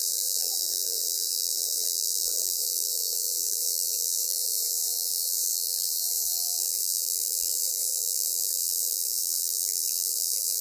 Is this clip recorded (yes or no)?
no